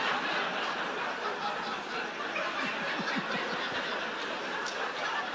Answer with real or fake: real